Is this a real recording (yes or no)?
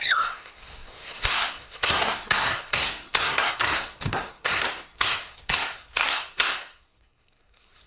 no